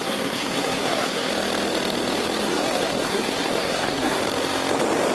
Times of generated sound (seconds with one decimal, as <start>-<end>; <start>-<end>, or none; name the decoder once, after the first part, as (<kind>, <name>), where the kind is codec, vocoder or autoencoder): 0.0-1.3 (codec, SNAC); 2.4-4.2